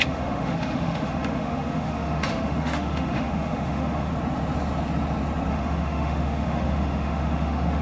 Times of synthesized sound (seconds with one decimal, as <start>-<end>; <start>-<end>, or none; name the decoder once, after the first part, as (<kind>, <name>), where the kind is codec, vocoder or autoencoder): 0.0-4.1 (autoencoder, DAC-VAE); 5.5-7.8